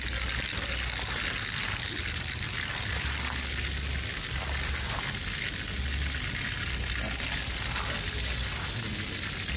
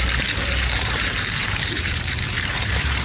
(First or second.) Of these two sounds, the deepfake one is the second